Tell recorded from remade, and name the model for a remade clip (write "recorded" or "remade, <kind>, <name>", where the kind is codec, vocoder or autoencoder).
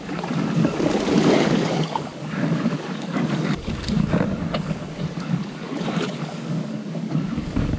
remade, codec, DAC